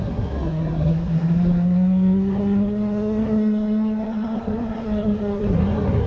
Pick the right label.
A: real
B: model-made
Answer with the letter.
B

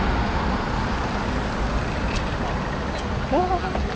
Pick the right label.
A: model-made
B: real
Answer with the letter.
B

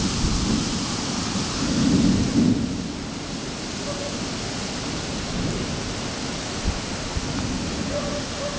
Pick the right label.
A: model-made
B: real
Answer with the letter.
B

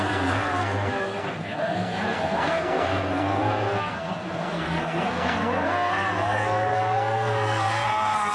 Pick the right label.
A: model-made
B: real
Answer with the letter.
A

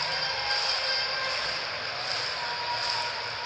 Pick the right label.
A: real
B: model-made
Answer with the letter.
A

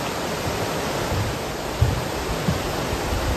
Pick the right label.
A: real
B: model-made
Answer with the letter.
A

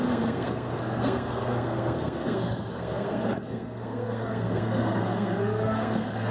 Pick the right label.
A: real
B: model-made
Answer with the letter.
B